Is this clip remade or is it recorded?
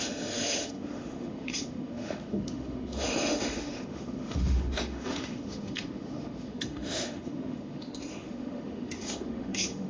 remade